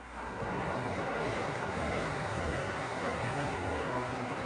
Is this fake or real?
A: fake